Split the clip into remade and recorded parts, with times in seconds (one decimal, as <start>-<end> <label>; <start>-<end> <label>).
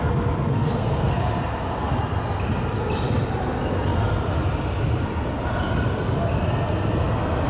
0.0-0.5 recorded; 0.5-1.2 remade; 1.2-7.5 recorded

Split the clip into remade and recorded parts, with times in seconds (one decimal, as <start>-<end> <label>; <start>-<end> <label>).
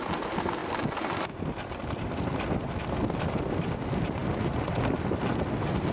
0.0-5.9 recorded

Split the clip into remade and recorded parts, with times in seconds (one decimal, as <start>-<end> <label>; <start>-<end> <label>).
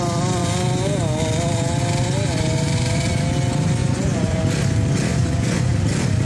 0.0-3.8 recorded; 3.8-4.4 remade; 4.4-5.1 recorded; 5.1-5.7 remade; 5.7-6.2 recorded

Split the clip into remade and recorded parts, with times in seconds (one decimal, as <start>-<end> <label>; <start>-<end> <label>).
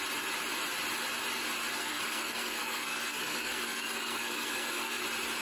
0.0-1.8 recorded; 1.8-5.0 remade; 5.0-5.4 recorded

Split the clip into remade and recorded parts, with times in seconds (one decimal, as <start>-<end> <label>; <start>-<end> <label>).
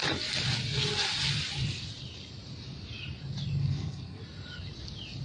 0.0-3.6 recorded; 3.6-4.2 remade; 4.2-5.2 recorded